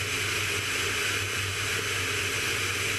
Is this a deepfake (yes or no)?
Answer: no